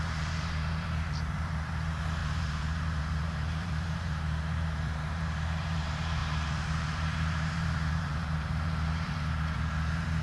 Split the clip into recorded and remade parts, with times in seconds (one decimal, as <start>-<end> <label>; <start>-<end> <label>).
0.0-10.2 remade